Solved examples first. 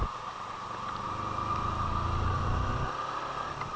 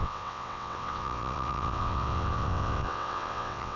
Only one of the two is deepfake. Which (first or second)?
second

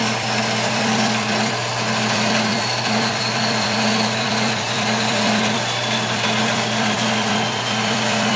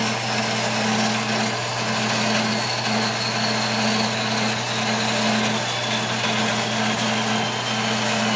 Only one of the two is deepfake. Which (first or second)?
first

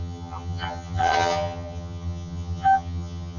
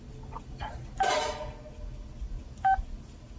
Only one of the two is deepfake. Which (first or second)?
first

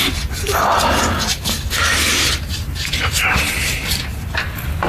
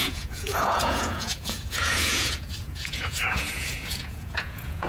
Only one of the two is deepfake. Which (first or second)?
second